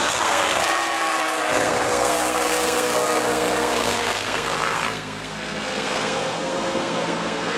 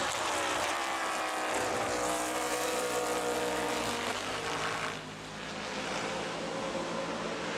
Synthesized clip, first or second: first